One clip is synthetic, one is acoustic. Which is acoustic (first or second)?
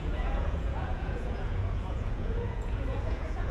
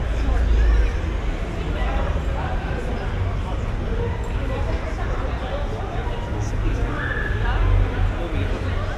second